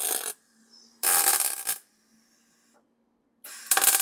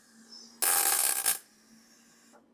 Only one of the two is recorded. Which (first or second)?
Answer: second